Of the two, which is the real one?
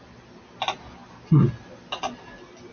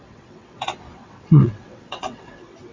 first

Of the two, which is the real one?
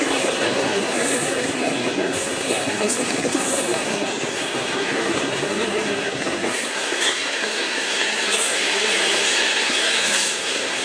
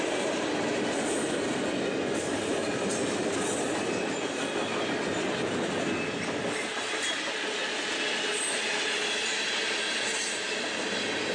second